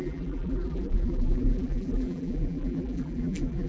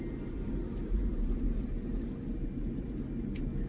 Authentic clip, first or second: second